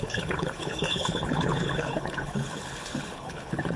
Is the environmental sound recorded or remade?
remade